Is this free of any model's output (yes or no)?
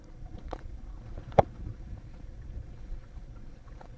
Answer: no